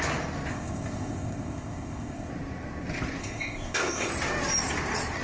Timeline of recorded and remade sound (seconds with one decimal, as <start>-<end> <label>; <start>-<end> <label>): 0.0-0.5 recorded; 0.5-2.3 remade; 2.3-3.2 recorded; 3.2-4.1 remade; 4.1-5.2 recorded